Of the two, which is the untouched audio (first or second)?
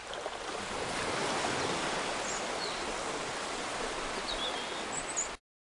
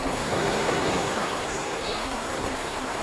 first